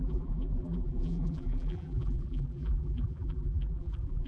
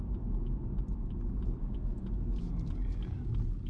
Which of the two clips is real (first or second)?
second